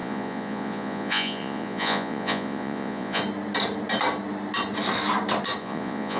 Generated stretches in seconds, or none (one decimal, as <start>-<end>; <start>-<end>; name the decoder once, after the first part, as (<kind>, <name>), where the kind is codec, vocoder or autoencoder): 0.0-3.2 (vocoder, Vocos); 5.6-6.2